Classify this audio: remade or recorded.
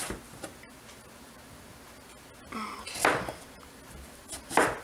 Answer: recorded